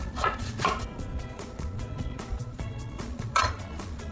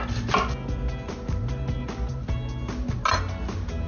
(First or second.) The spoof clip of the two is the first